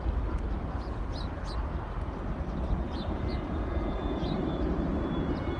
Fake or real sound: real